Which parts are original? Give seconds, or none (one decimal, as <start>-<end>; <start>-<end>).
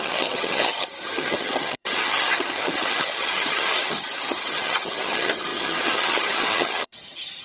none